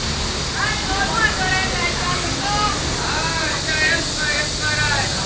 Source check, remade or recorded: recorded